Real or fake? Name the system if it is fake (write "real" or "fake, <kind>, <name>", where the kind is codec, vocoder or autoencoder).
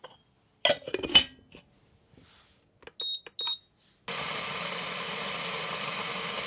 real